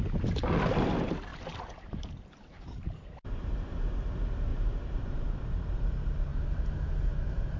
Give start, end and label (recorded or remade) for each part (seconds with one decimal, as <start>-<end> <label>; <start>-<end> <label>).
0.0-1.3 recorded; 1.3-3.4 remade; 3.4-4.5 recorded; 4.5-5.5 remade; 5.5-6.3 recorded; 6.3-7.6 remade